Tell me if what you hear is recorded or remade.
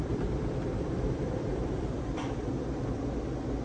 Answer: remade